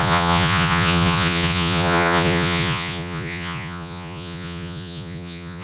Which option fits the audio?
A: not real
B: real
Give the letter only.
A